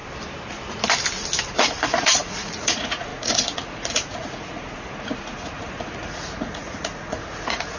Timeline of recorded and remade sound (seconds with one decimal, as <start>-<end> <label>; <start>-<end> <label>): 0.0-1.5 recorded; 1.5-7.8 remade